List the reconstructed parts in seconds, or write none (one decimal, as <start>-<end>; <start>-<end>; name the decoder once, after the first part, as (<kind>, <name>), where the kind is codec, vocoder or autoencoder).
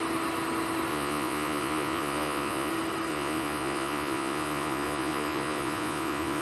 0.9-2.7 (vocoder, Vocos); 3.1-6.4